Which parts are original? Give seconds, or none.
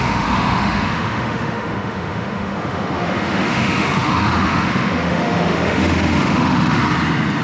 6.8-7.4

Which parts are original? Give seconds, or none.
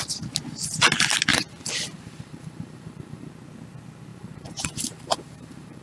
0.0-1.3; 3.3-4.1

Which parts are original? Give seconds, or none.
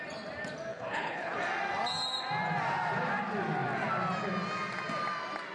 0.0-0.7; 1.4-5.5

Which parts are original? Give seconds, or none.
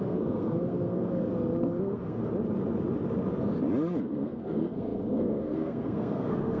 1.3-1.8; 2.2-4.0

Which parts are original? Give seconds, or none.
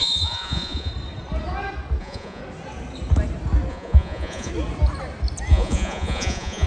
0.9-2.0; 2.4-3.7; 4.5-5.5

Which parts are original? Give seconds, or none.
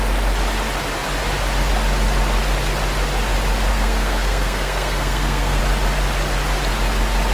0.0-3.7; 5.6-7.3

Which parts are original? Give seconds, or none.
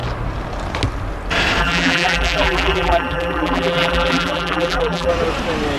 0.0-1.6; 5.1-5.8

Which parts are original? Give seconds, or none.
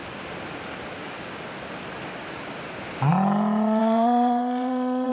0.0-3.8